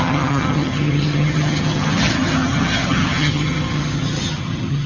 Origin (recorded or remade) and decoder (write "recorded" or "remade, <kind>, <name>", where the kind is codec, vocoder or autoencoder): remade, vocoder, HiFi-GAN